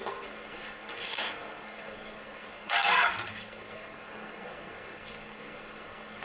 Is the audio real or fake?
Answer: fake